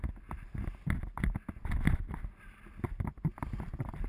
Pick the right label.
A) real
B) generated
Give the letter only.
A